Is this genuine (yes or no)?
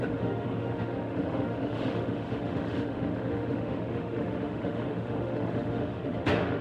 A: no